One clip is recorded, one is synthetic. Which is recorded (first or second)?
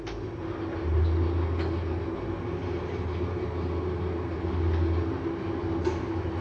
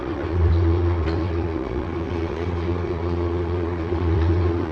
first